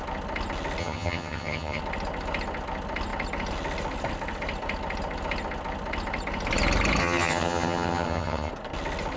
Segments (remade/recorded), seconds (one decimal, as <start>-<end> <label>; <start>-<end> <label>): 0.0-0.8 recorded; 0.8-1.8 remade; 1.8-7.0 recorded; 7.0-8.5 remade; 8.5-9.2 recorded